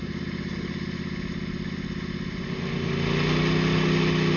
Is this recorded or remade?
recorded